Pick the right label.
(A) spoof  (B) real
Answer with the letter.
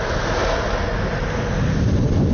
B